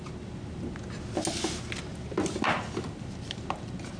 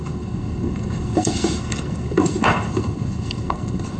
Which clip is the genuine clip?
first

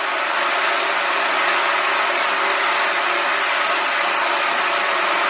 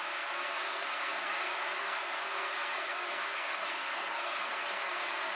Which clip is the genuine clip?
first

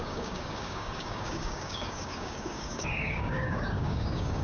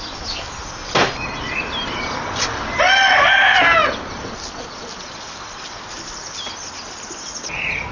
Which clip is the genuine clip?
second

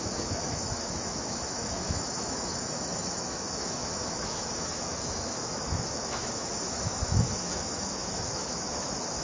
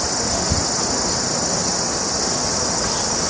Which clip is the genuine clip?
second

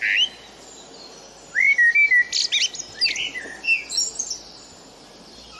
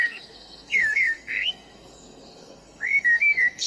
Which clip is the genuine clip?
first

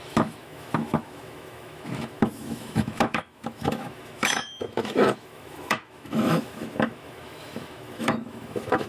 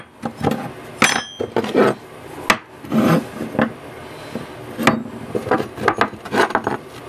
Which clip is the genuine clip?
second